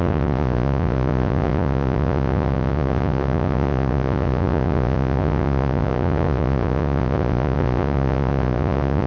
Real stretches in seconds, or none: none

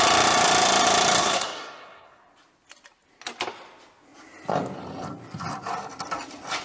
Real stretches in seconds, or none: 0.0-1.2; 2.2-6.6